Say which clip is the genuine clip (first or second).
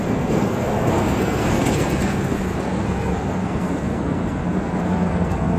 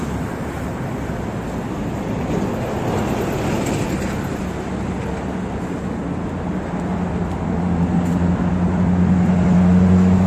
second